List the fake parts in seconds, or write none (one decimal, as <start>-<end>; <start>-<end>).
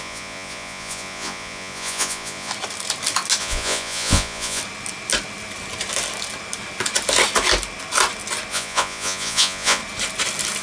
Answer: 0.0-2.5; 3.4-4.6; 8.5-9.8